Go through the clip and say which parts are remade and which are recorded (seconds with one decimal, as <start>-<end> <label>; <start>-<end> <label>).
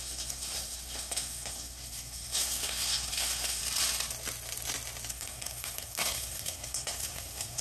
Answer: 0.0-3.6 remade; 3.6-5.1 recorded; 5.1-7.6 remade